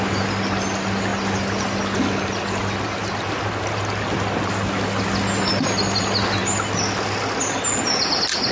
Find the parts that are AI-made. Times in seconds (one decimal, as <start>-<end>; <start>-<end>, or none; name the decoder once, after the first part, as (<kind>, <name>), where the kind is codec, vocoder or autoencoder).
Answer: none